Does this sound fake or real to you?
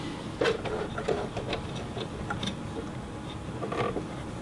real